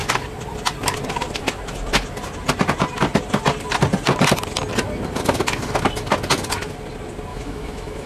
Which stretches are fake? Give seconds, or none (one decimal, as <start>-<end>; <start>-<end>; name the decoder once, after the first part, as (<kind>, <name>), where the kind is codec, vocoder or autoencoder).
7.3-8.1 (autoencoder, DAC-VAE)